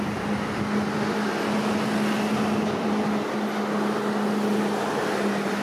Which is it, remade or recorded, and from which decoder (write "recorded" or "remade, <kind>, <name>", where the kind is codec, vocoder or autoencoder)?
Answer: recorded